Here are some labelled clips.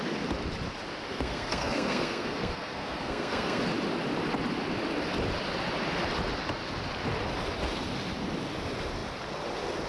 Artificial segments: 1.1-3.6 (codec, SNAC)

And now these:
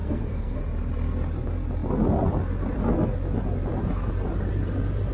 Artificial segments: 0.0-0.6 (codec, SNAC)